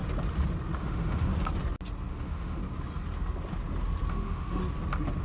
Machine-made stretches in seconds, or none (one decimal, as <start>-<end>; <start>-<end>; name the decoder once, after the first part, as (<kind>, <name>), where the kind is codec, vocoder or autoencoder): 0.8-1.3 (autoencoder, DAC-VAE); 2.1-2.6; 4.1-4.6